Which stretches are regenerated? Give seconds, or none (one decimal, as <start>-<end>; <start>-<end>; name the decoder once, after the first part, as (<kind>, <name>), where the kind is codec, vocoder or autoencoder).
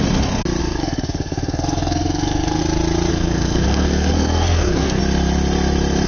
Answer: 0.6-2.6 (codec, SNAC); 3.1-5.0